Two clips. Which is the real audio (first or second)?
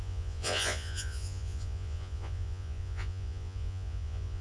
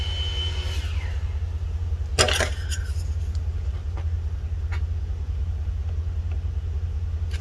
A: second